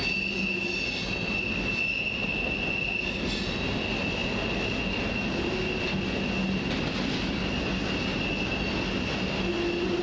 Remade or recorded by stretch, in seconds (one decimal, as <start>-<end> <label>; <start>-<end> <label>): 0.0-10.0 recorded